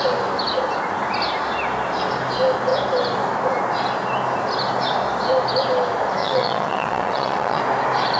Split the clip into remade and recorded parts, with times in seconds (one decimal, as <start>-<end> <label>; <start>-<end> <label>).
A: 0.0-6.2 recorded; 6.2-7.6 remade; 7.6-8.2 recorded